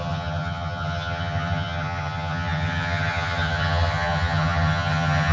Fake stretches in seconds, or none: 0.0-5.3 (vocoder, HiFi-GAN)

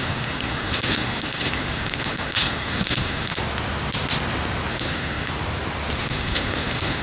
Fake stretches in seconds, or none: 0.0-3.4 (codec, SNAC); 4.7-5.3; 6.0-7.0

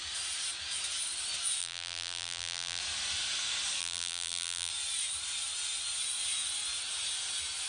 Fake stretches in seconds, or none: 1.6-2.8 (vocoder, BigVGAN v2); 3.8-4.7

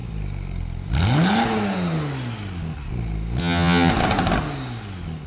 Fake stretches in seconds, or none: 3.4-3.9 (vocoder, HiFi-GAN)

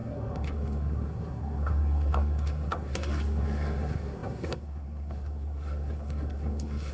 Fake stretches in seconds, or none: 0.0-6.9 (codec, SNAC)

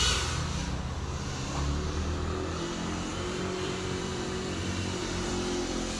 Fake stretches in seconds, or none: 3.1-5.3 (vocoder, BigVGAN v2)